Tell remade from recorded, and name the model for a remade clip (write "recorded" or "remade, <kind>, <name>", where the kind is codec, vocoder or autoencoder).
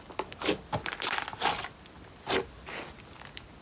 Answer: recorded